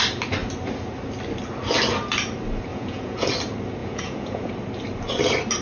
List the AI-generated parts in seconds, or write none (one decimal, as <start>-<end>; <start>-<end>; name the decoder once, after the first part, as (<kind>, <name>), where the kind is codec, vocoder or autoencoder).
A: 2.7-3.3 (vocoder, Vocos); 3.8-4.5